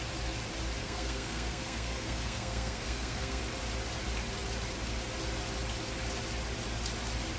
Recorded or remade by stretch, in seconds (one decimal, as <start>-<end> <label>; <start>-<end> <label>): 0.0-0.8 recorded; 0.8-3.4 remade; 3.4-7.4 recorded